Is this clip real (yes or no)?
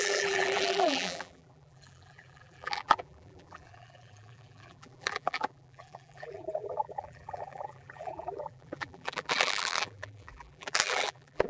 no